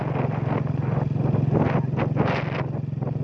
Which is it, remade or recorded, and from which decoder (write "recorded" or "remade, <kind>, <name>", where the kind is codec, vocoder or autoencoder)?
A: recorded